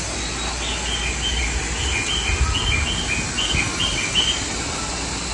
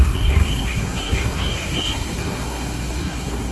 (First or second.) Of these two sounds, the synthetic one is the second